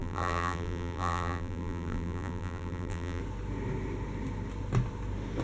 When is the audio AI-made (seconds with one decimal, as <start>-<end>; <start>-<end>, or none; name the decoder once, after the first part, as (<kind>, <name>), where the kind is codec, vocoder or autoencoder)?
0.0-3.2 (vocoder, BigVGAN v2)